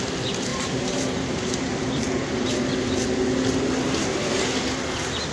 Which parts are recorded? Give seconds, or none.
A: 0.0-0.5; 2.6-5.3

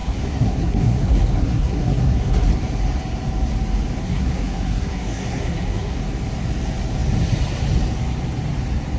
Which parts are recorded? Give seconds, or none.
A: 2.5-4.0; 6.0-9.0

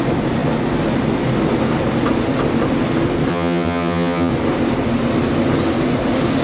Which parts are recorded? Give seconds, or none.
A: 0.0-3.3; 4.3-6.4

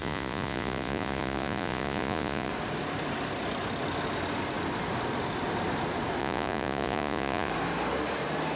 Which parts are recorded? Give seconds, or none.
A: 2.5-6.2; 7.5-8.6

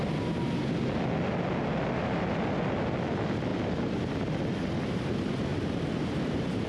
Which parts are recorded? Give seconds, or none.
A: 0.0-6.7